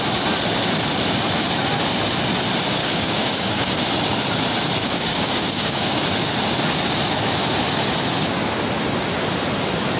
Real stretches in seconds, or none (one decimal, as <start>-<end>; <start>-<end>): 0.0-2.8; 3.8-4.8; 5.8-10.0